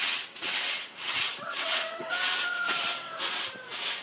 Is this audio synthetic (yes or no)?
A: yes